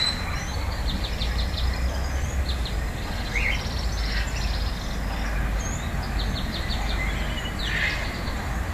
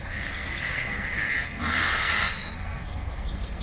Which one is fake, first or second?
second